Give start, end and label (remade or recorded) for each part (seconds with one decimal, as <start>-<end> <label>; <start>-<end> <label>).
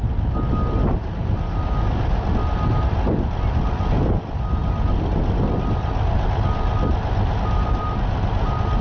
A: 0.0-8.8 recorded